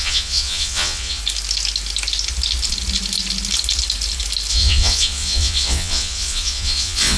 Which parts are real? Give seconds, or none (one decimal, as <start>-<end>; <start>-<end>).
1.2-4.5